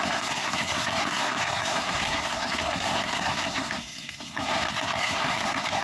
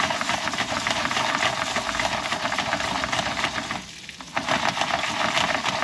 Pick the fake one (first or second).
first